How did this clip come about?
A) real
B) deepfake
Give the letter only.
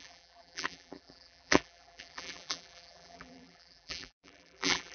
B